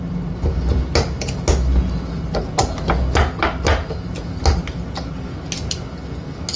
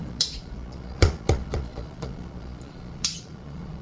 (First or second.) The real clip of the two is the first